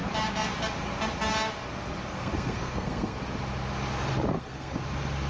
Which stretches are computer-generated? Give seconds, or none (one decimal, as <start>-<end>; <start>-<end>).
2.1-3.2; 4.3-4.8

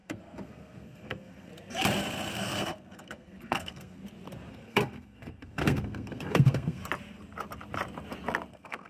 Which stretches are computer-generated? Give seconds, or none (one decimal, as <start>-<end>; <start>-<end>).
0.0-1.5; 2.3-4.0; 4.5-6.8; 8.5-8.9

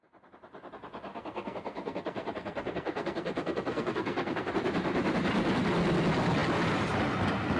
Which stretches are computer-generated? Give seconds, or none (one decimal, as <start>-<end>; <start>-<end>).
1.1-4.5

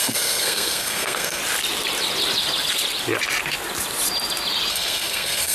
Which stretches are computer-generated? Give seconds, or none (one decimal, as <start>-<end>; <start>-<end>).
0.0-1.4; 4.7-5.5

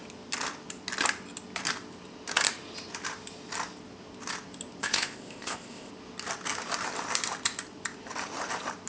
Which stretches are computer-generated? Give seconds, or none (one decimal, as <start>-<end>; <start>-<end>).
4.8-5.9